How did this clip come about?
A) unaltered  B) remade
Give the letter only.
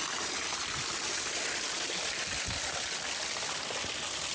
A